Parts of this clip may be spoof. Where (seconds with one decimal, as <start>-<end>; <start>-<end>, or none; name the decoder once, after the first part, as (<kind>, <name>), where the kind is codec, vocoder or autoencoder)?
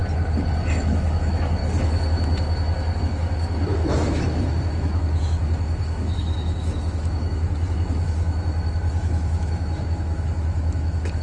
0.8-1.6 (autoencoder, DAC-VAE); 3.0-11.2